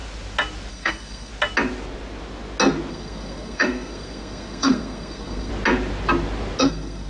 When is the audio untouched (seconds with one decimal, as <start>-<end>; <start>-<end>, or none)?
0.0-0.7; 1.3-2.9; 5.5-6.6